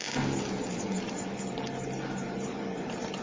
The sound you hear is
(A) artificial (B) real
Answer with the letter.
B